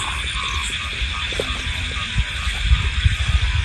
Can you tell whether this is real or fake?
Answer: real